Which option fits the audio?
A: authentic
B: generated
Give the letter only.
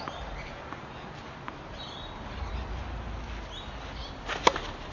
A